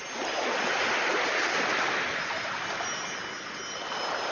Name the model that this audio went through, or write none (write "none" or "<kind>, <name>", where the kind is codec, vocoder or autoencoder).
none